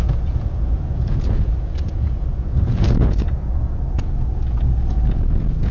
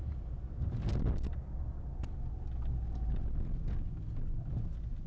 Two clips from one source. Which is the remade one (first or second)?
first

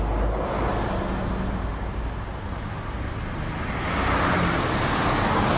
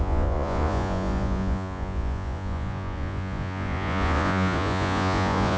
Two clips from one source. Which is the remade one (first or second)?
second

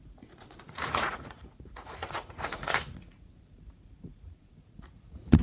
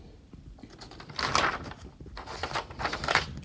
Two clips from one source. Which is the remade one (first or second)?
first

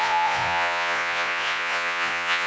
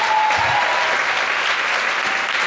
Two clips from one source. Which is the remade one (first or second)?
first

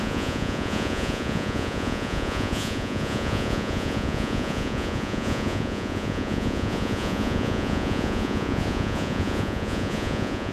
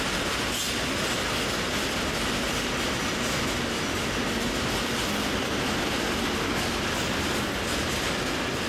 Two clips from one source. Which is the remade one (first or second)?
first